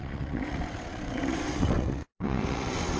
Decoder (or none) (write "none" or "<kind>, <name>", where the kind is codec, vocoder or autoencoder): vocoder, WaveNeXt